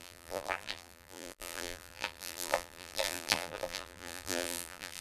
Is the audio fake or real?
fake